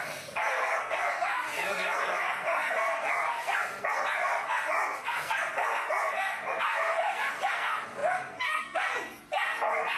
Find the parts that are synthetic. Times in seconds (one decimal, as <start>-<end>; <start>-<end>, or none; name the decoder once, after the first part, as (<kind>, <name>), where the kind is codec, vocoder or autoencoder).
0.0-10.0 (codec, SNAC)